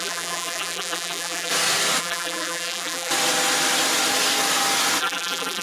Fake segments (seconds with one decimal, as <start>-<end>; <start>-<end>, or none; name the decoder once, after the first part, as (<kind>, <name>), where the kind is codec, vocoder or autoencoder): 0.0-1.5 (vocoder, BigVGAN v2); 2.0-3.1; 5.0-5.6